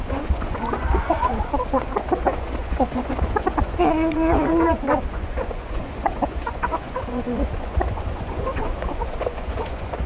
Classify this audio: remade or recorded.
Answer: remade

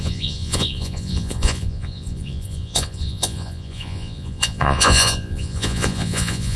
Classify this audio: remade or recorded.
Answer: remade